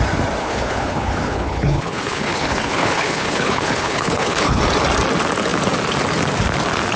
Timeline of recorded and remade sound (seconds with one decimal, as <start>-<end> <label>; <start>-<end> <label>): 0.0-0.4 recorded; 0.4-4.6 remade; 4.6-7.0 recorded

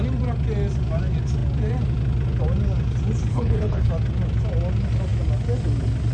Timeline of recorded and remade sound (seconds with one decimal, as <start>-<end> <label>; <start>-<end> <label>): 0.0-3.3 recorded; 3.3-3.9 remade; 3.9-6.1 recorded

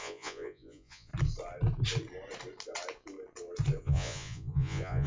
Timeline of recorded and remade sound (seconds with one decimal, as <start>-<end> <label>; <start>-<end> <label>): 0.0-1.1 remade; 1.1-3.8 recorded; 3.8-5.1 remade

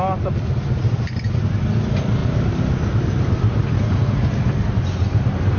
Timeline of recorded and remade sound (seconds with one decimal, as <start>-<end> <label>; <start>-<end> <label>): 0.0-5.6 recorded